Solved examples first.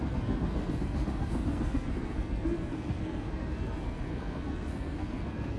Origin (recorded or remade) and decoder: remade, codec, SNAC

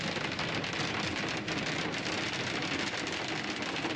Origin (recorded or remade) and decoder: recorded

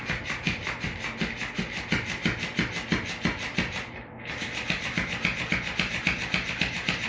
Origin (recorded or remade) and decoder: recorded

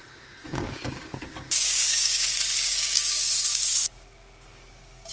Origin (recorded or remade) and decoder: remade, codec, DAC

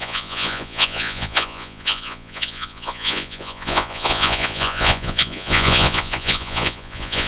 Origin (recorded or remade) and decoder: remade, vocoder, Vocos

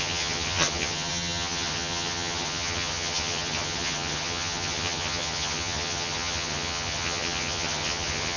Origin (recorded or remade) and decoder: remade, vocoder, HiFi-GAN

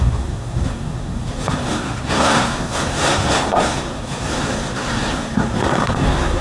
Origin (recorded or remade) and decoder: remade, codec, SNAC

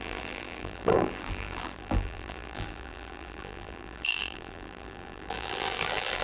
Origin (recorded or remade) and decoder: remade, vocoder, BigVGAN v2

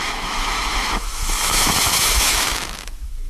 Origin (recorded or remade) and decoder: remade, autoencoder, DAC-VAE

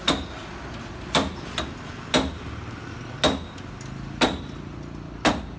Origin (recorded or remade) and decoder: recorded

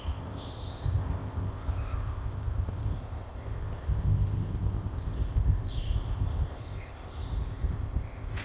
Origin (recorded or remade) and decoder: remade, codec, ZipCodec